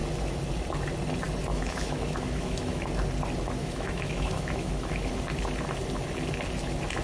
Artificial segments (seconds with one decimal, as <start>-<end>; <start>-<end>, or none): 1.5-2.9; 3.6-5.1